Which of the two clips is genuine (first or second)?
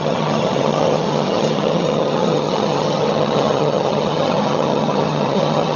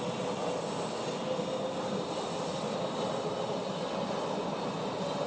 second